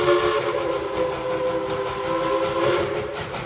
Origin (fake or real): real